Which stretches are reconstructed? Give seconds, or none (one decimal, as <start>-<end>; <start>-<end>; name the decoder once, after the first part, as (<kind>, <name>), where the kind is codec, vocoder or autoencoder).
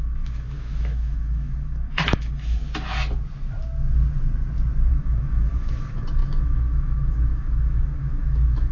0.0-2.6 (autoencoder, DAC-VAE); 4.9-8.7